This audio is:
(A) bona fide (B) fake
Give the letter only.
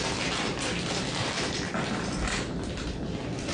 A